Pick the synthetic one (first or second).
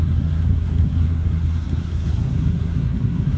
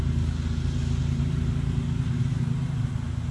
first